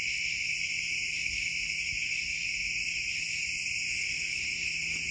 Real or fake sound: real